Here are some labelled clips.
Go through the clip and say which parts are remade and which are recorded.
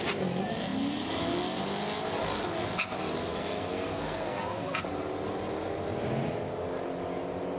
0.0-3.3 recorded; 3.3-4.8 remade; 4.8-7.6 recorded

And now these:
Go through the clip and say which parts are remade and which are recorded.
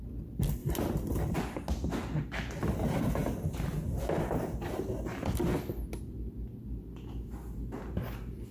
0.0-8.5 recorded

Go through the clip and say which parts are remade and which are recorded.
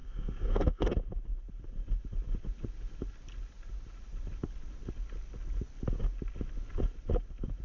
0.0-0.9 remade; 0.9-7.6 recorded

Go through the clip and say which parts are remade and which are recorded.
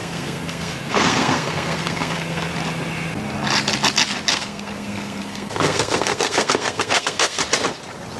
0.0-2.5 remade; 2.5-4.3 recorded; 4.3-7.4 remade; 7.4-8.2 recorded